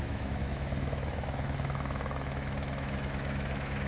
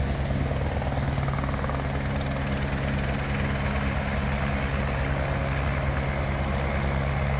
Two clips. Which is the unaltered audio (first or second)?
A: second